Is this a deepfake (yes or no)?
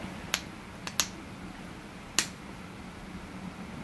no